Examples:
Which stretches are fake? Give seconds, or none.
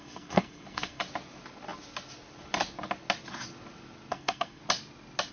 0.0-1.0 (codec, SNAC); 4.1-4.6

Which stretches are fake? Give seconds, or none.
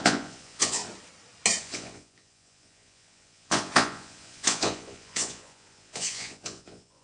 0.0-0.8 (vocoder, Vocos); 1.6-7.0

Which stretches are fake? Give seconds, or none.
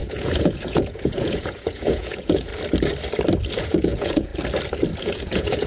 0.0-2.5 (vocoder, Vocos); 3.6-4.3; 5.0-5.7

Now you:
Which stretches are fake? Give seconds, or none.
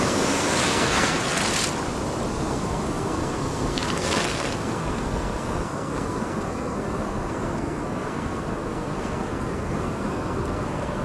0.0-1.4 (codec, SNAC); 2.3-11.0